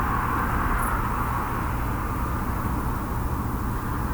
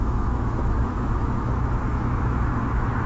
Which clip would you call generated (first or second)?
second